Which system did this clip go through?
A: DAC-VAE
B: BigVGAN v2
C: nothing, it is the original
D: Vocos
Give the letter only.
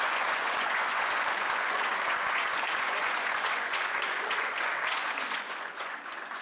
D